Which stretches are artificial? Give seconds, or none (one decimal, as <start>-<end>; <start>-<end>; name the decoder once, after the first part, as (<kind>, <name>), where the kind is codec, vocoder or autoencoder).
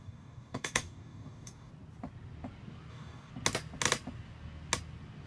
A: 0.0-1.7 (codec, DAC); 2.9-3.3